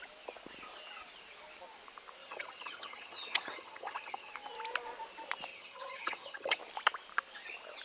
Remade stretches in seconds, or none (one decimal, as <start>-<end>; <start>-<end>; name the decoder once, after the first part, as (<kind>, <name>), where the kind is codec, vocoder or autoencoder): 2.2-4.3 (vocoder, HiFi-GAN); 5.5-6.6